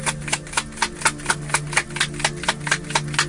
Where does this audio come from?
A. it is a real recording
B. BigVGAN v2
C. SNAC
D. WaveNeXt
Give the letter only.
A